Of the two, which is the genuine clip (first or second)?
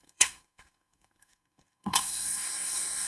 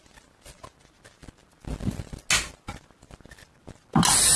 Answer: second